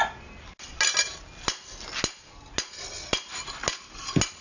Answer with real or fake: real